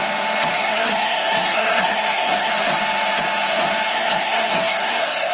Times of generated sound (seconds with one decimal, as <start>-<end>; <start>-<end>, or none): 0.5-2.5; 3.9-5.3